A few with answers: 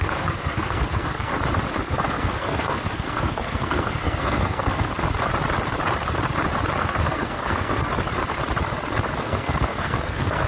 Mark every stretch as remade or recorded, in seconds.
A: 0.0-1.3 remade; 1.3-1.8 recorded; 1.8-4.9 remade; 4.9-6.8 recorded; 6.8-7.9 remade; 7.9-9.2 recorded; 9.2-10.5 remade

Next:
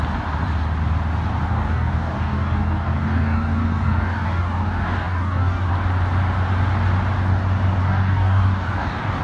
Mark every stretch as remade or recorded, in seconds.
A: 0.0-1.5 recorded; 1.5-5.7 remade; 5.7-7.8 recorded; 7.8-9.2 remade

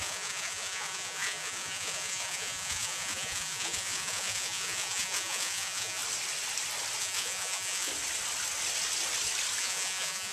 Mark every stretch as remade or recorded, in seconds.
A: 0.0-6.0 remade; 6.0-7.0 recorded; 7.0-7.9 remade; 7.9-9.6 recorded; 9.6-10.3 remade